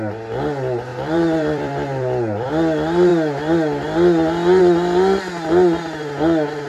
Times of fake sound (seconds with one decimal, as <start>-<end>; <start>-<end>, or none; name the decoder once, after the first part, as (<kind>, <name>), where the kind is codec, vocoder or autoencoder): 0.9-2.5 (vocoder, BigVGAN v2)